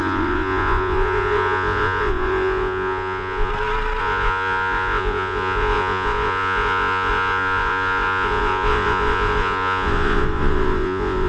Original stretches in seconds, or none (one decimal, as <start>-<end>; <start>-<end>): 3.5-4.0